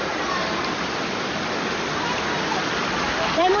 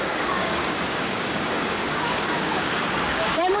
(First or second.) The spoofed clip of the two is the second